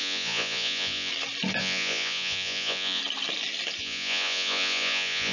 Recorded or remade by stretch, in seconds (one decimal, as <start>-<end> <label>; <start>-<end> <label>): 0.0-1.1 remade; 1.1-1.6 recorded; 1.6-3.0 remade; 3.0-3.8 recorded; 3.8-5.3 remade